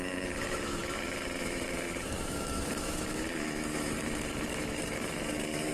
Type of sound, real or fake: fake